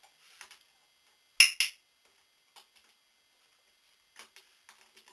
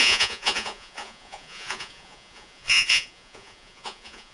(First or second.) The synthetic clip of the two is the second